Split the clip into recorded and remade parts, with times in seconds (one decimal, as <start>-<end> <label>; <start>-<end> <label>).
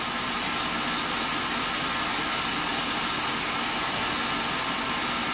0.0-5.3 recorded